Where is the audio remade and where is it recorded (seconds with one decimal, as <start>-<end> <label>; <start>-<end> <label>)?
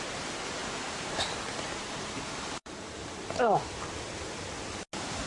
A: 0.0-0.6 recorded; 0.6-3.8 remade; 3.8-5.3 recorded